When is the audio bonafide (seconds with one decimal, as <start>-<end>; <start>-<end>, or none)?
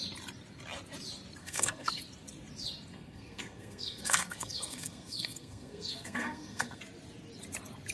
0.0-1.4; 2.0-2.9; 6.8-7.9